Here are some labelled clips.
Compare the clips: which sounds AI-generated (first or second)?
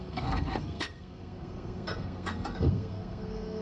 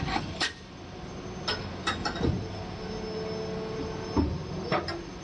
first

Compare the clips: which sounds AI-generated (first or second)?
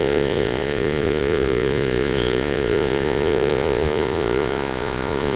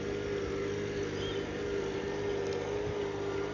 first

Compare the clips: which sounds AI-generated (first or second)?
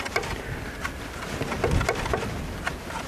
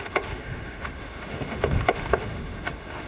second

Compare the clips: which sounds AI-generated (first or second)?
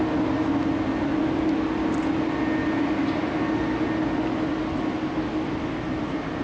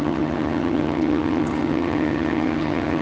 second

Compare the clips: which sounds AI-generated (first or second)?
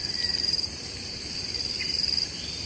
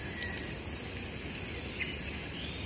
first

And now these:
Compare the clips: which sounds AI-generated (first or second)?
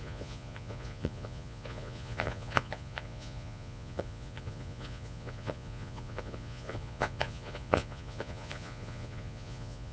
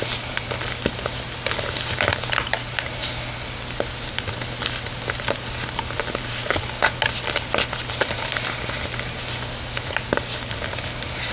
first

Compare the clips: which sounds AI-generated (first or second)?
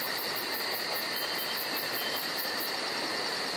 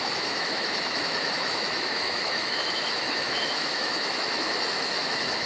second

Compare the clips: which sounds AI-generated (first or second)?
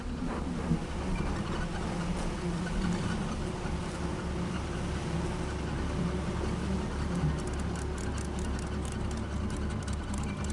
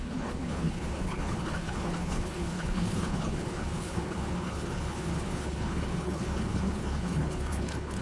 second